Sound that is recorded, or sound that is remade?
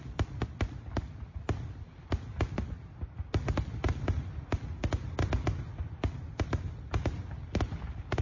recorded